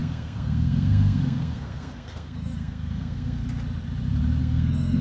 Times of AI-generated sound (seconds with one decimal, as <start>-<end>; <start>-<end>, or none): 0.0-3.4; 4.4-5.0